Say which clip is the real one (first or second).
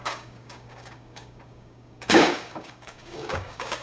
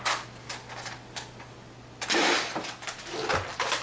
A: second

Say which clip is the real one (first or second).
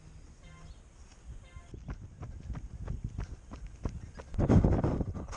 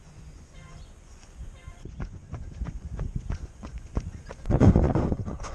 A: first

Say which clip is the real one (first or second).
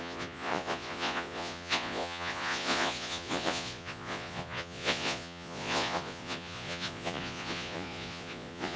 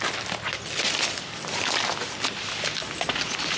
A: second